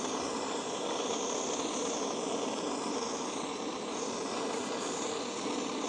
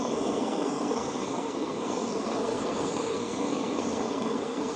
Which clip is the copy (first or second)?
second